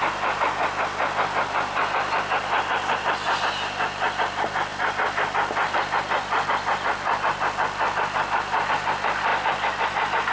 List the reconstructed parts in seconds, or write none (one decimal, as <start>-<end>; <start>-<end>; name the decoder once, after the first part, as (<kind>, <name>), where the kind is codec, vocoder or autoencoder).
4.7-8.7 (vocoder, BigVGAN v2)